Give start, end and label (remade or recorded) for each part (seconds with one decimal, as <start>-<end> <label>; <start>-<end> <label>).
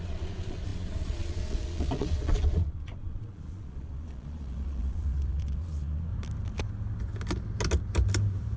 0.0-6.1 remade; 6.1-8.6 recorded